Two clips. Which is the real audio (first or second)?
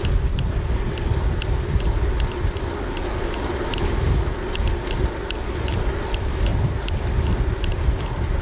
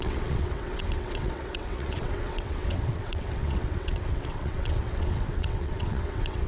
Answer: first